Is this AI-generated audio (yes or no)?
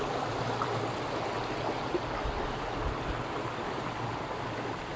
no